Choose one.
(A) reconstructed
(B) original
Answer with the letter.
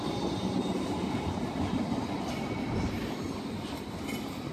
B